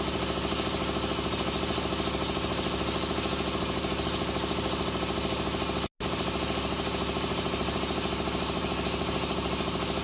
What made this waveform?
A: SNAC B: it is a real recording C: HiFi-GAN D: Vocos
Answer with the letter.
B